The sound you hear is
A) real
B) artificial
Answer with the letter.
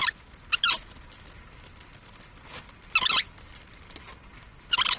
A